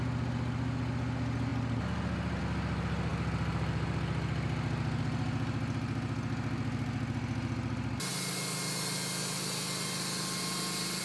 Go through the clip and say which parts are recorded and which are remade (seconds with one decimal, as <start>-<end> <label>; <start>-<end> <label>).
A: 0.0-11.0 recorded